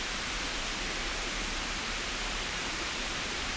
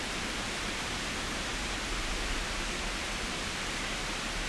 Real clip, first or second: second